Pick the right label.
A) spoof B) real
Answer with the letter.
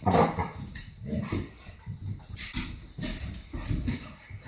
B